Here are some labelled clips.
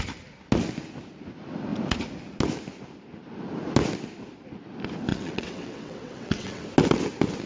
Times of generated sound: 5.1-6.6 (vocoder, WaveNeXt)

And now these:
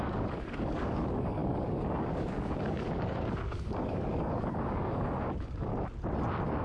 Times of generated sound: 0.0-5.7 (codec, DAC)

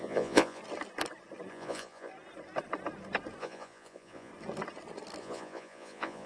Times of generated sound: 0.0-0.6 (vocoder, Vocos); 1.5-2.1; 3.4-4.3; 5.2-6.3

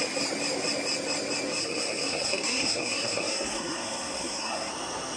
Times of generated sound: 1.6-4.7 (codec, SNAC)

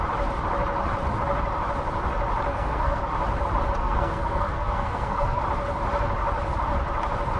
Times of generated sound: 2.5-3.0 (codec, SNAC); 3.8-5.4